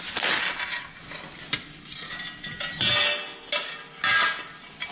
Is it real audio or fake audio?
real